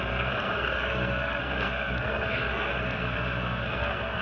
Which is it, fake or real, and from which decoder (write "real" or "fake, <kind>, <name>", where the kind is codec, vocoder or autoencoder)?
fake, codec, SNAC